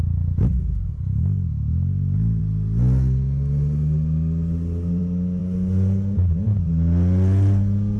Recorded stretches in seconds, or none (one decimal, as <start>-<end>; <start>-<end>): 0.0-8.0